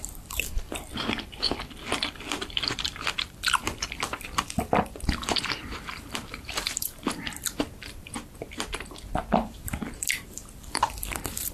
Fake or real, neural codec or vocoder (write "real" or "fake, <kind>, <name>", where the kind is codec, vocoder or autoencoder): fake, vocoder, BigVGAN v2